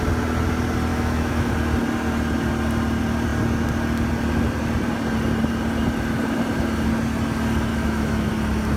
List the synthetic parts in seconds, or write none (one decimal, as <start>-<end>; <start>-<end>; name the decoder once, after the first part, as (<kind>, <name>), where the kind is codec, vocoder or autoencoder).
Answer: 0.9-1.5 (autoencoder, DAC-VAE); 7.7-8.3

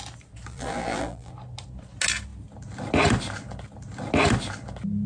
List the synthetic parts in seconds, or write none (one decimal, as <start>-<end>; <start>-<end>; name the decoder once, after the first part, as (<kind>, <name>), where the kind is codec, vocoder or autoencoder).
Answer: 0.5-1.3 (vocoder, BigVGAN v2)